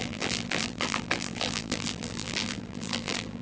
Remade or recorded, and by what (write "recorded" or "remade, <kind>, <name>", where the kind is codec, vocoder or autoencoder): remade, vocoder, BigVGAN v2